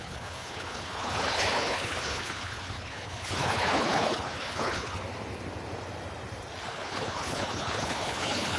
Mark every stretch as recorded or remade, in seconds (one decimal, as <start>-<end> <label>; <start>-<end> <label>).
0.0-5.0 remade; 5.0-6.7 recorded; 6.7-8.6 remade